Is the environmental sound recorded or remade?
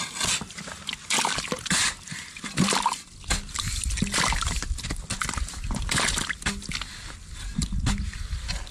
recorded